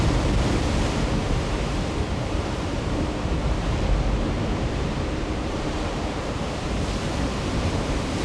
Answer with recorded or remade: remade